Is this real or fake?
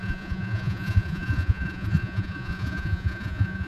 fake